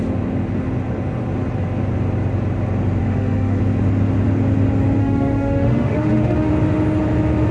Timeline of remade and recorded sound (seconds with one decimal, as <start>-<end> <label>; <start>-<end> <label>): 0.0-3.0 recorded; 3.0-3.6 remade; 3.6-5.0 recorded; 5.0-6.5 remade; 6.5-7.5 recorded